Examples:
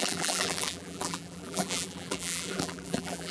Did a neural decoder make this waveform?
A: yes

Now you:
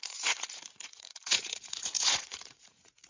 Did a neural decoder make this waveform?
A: yes